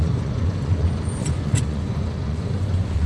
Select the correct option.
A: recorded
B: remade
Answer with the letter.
B